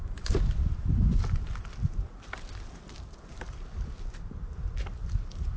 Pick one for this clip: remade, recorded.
recorded